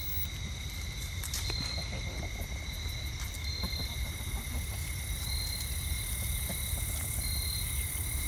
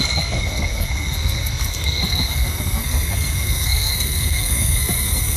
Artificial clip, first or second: second